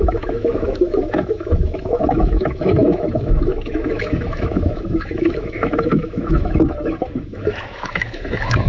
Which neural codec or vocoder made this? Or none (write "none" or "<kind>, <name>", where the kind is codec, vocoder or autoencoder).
autoencoder, DAC-VAE